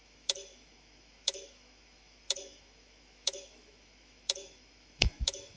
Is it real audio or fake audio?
fake